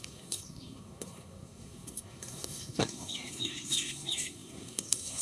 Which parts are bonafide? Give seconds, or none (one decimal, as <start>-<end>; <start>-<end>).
none